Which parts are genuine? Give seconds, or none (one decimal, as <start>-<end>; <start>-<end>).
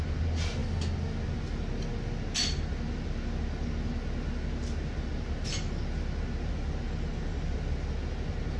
0.0-8.6